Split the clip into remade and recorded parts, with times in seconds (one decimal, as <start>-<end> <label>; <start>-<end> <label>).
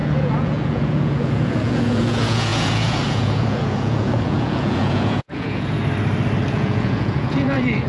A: 0.0-5.8 remade; 5.8-6.5 recorded; 6.5-7.9 remade